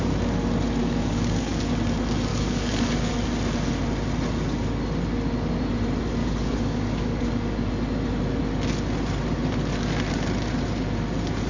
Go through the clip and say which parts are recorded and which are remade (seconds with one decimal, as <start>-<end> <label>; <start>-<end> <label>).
0.0-0.8 recorded; 0.8-1.7 remade; 1.7-2.3 recorded; 2.3-3.1 remade; 3.1-6.2 recorded; 6.2-7.7 remade; 7.7-11.5 recorded